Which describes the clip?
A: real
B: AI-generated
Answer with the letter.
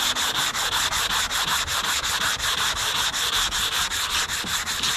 B